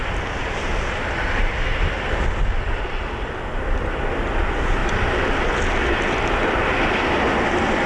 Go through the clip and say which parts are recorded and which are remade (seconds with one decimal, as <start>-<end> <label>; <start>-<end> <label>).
0.0-7.9 recorded